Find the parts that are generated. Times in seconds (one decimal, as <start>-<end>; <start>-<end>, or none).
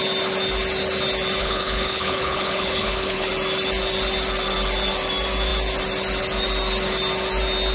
1.4-3.3